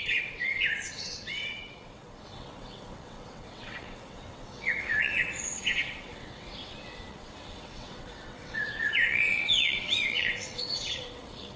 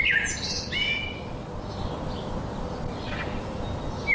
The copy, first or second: first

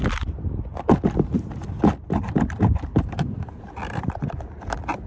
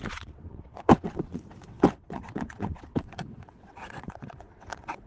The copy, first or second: second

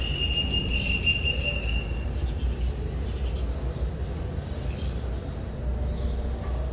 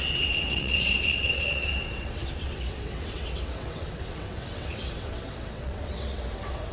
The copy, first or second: second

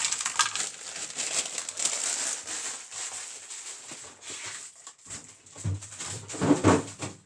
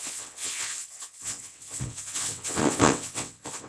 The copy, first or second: second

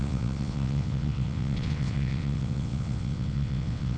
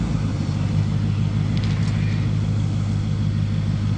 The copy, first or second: first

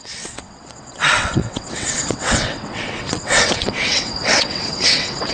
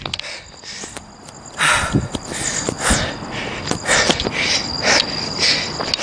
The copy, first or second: first